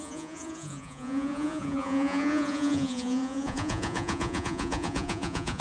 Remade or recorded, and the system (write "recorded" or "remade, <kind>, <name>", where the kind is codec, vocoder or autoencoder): remade, vocoder, Vocos